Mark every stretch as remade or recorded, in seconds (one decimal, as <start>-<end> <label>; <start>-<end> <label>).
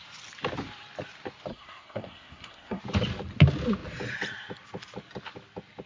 0.0-1.5 recorded; 1.5-2.8 remade; 2.8-5.9 recorded